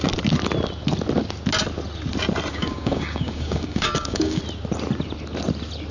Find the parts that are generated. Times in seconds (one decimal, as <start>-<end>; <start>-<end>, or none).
2.5-4.4